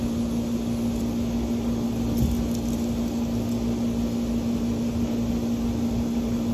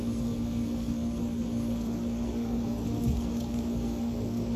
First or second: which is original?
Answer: first